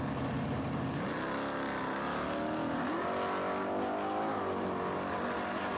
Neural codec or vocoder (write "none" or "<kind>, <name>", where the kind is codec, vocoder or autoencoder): none